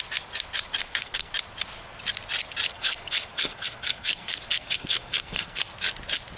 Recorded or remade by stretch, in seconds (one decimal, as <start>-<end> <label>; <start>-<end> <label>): 0.0-0.8 recorded; 0.8-1.3 remade; 1.3-2.7 recorded; 2.7-5.6 remade; 5.6-6.4 recorded